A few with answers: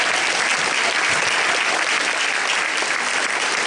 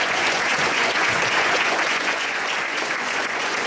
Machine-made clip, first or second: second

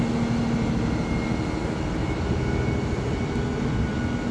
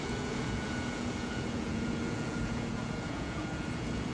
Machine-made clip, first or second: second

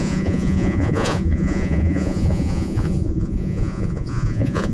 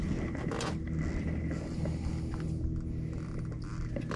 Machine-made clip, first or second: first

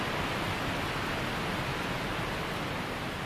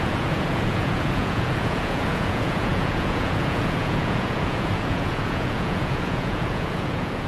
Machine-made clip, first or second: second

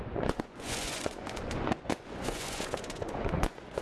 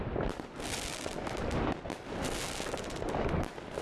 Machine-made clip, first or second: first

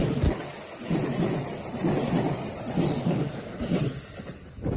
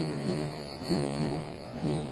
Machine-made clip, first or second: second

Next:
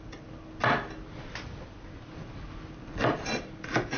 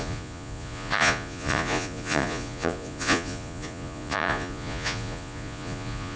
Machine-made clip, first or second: second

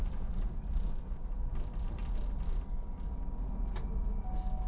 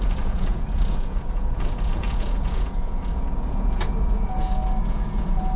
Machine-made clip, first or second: second